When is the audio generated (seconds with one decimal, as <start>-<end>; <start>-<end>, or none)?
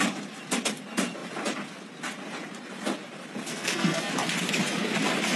3.5-4.1